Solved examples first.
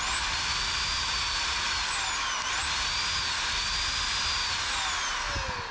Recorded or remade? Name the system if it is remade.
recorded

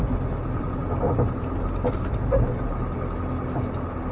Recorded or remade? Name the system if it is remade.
recorded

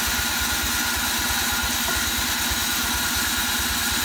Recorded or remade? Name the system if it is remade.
recorded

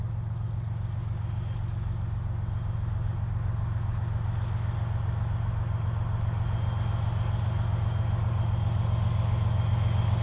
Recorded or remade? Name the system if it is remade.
recorded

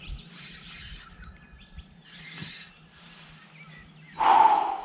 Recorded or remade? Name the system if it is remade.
recorded